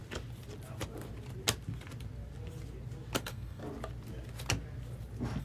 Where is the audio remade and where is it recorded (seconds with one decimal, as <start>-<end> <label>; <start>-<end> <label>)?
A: 0.0-3.2 recorded; 3.2-3.6 remade; 3.6-5.4 recorded